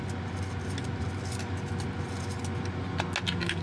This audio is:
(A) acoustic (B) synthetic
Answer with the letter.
A